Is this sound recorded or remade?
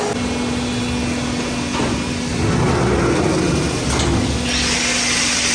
recorded